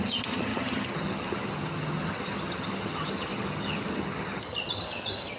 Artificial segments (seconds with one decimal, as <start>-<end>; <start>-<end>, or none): 0.0-5.4